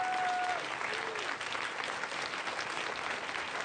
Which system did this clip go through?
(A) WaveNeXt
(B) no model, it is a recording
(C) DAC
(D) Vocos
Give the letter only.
B